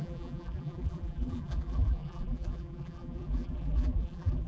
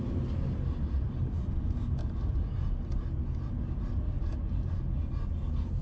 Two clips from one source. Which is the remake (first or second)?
first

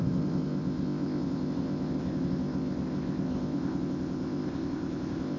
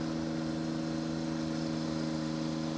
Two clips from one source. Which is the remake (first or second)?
first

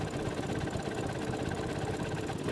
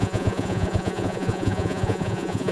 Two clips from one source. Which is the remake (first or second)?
second